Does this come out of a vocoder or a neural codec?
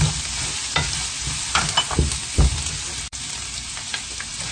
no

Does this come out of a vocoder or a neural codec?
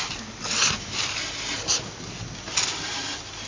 no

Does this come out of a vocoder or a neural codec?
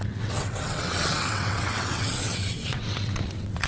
yes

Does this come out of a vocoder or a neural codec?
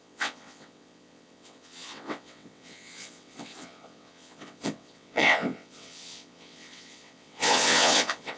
yes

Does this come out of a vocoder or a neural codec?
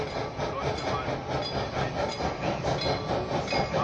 no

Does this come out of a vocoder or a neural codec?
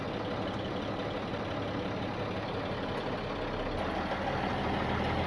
no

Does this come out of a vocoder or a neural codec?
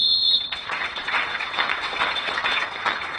yes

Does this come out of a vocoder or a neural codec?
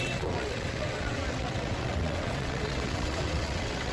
yes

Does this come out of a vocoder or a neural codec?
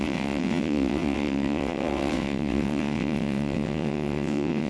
yes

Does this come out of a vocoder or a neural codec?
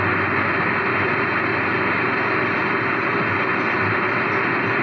no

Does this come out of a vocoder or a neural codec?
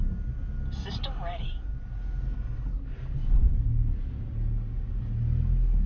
no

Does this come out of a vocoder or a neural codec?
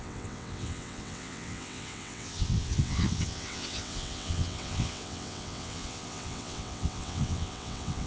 yes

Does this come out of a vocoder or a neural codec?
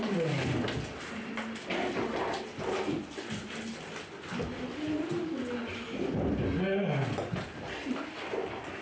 no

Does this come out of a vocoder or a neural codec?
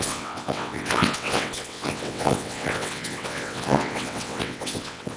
yes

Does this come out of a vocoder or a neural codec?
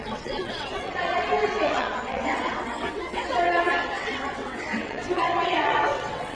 yes